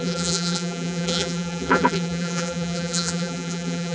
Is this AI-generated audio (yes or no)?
yes